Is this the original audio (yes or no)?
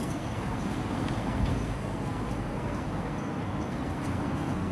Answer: no